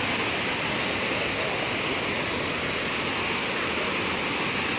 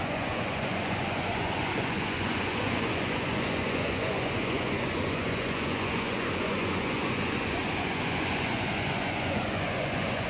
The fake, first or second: second